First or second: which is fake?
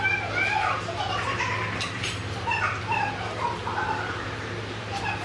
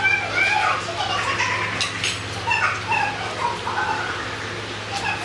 first